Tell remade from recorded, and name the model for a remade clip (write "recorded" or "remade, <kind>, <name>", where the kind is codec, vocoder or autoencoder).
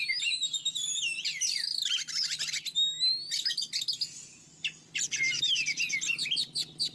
recorded